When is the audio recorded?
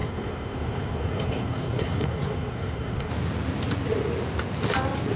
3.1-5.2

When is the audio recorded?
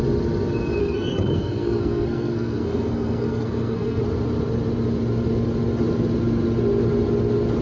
0.0-0.8; 4.0-7.6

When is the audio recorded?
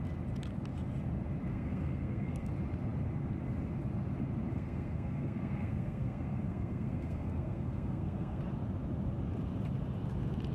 0.0-1.5; 2.5-4.5; 8.4-10.5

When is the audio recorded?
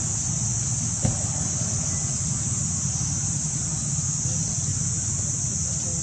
0.0-6.0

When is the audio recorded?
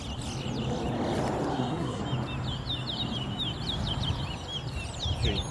0.0-1.5; 2.0-5.5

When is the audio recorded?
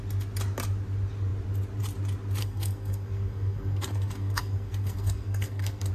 0.0-2.4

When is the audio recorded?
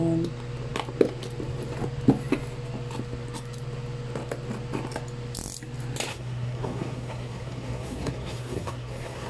0.0-6.1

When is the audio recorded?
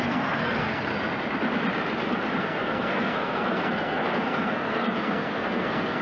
0.9-2.4